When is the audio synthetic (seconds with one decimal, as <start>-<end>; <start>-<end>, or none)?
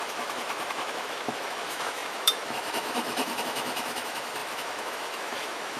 0.0-5.8